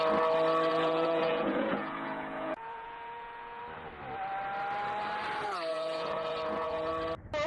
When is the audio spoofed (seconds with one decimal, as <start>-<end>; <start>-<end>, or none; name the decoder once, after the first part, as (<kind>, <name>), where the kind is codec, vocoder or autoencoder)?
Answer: 0.7-3.6 (vocoder, Vocos); 5.7-6.9